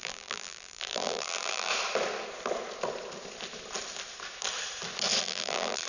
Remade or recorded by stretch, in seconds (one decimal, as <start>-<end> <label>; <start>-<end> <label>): 0.0-1.7 remade; 1.7-5.2 recorded; 5.2-5.9 remade